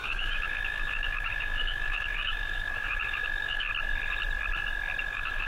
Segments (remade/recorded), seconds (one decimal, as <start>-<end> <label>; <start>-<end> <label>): 0.0-3.7 remade; 3.7-5.0 recorded; 5.0-5.5 remade